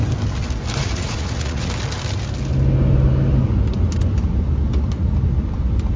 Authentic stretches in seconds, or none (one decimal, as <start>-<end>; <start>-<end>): 0.0-0.8; 1.7-6.0